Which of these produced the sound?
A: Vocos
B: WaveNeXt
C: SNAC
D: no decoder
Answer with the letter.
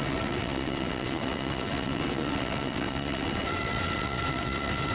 B